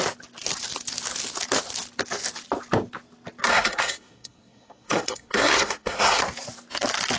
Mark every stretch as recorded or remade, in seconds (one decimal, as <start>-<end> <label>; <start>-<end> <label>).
0.0-3.5 recorded; 3.5-6.2 remade; 6.2-7.2 recorded

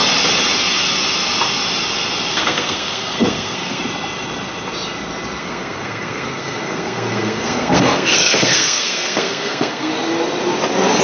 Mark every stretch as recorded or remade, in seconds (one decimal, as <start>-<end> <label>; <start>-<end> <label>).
0.0-2.3 recorded; 2.3-3.8 remade; 3.8-5.4 recorded; 5.4-9.9 remade; 9.9-11.0 recorded

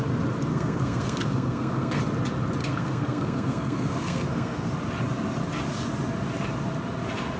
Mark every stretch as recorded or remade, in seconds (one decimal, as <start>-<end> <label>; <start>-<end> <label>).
0.0-0.5 recorded; 0.5-2.0 remade; 2.0-2.6 recorded; 2.6-4.7 remade; 4.7-7.4 recorded

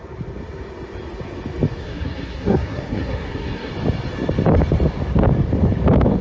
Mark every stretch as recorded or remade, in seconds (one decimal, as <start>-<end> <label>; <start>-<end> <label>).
0.0-1.8 recorded; 1.8-3.7 remade; 3.7-6.2 recorded